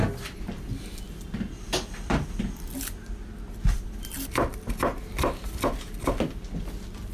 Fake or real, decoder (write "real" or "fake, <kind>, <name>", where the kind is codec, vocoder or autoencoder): real